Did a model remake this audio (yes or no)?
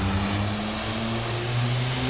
no